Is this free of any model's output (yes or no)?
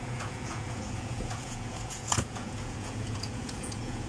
no